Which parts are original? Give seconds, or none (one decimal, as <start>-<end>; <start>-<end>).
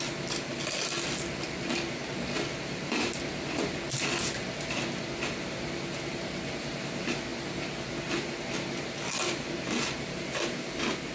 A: 0.0-11.1